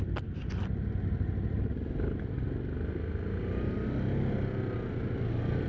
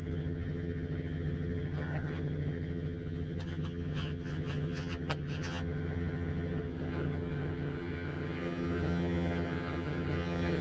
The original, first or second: first